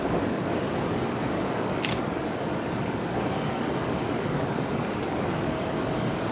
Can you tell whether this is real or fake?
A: fake